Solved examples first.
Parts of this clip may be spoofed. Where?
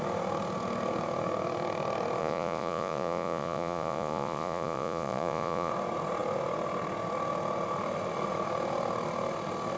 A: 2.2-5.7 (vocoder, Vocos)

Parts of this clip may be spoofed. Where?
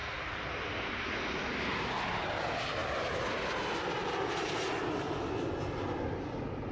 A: none